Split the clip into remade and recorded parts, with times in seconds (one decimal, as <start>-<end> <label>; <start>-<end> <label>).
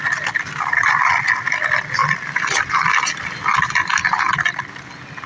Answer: 0.0-5.3 recorded